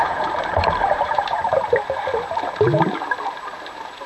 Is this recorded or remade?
remade